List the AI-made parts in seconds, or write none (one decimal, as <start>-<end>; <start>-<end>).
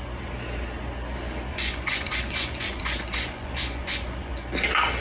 1.5-4.5